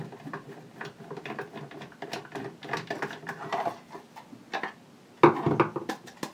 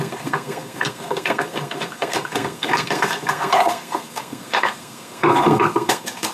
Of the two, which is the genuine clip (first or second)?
first